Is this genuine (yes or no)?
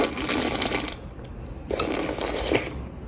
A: yes